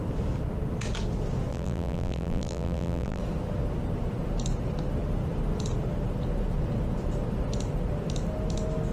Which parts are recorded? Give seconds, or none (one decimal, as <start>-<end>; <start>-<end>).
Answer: 0.0-1.5; 3.2-8.9